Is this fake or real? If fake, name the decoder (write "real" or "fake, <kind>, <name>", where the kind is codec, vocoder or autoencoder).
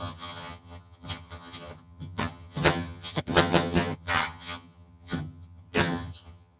fake, vocoder, HiFi-GAN